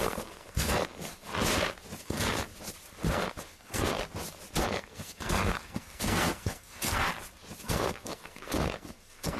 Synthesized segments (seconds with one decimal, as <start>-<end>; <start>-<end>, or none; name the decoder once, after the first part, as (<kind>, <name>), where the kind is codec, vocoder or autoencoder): 0.0-1.3 (codec, SNAC); 2.0-2.5; 3.1-4.0; 4.6-7.1; 7.6-9.4